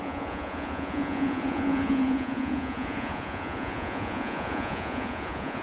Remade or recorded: remade